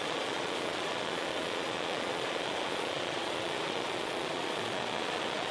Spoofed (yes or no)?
yes